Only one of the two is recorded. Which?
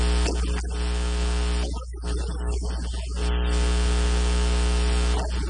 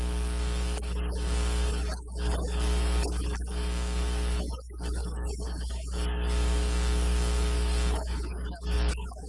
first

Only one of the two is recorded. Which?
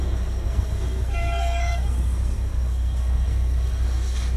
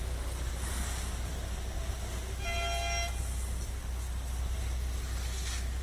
second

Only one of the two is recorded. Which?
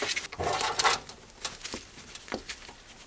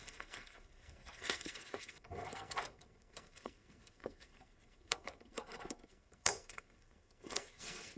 first